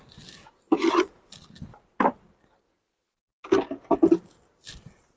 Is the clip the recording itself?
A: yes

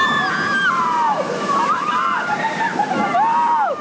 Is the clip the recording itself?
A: yes